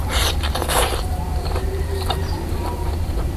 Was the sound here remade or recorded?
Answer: remade